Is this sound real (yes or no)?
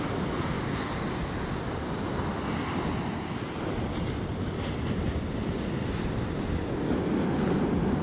yes